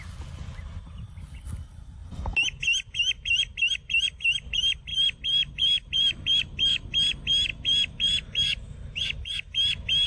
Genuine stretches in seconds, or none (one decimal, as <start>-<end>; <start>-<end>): 0.0-4.9; 6.3-7.5; 9.3-10.1